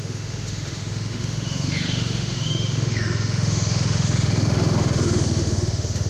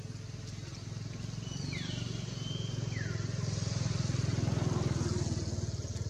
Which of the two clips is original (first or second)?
second